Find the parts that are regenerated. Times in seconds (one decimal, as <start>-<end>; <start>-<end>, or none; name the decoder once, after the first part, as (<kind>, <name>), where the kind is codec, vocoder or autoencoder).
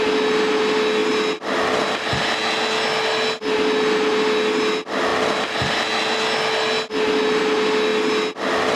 none